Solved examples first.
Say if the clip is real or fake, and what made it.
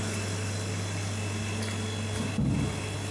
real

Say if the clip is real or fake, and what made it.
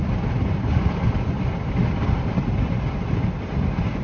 real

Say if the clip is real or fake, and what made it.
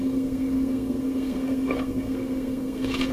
fake, codec, SNAC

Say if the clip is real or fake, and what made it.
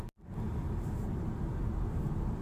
real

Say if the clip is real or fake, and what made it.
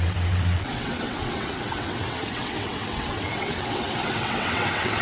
fake, vocoder, WaveNeXt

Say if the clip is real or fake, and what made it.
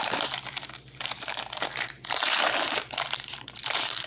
fake, vocoder, BigVGAN v2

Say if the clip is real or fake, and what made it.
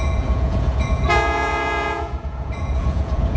fake, vocoder, Vocos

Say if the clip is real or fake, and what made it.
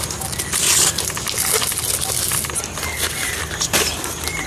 real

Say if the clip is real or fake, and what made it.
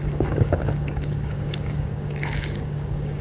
fake, codec, DAC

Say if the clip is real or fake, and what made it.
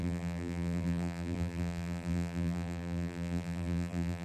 fake, vocoder, BigVGAN v2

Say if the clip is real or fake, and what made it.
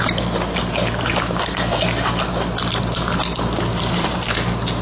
real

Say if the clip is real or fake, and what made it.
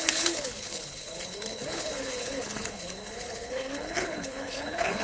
fake, codec, HILCodec